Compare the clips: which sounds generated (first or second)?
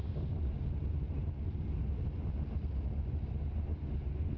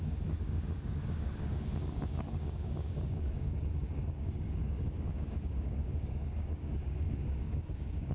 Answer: second